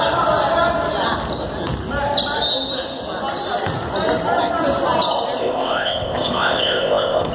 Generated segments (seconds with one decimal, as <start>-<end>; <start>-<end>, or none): 5.4-7.3